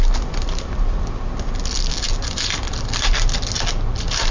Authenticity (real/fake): real